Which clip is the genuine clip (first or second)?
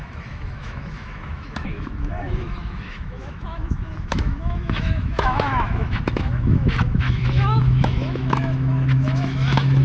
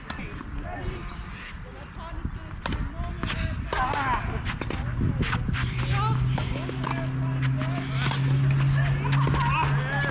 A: second